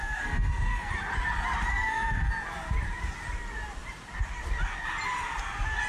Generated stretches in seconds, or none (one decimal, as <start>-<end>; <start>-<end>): 0.0-0.9; 1.7-2.3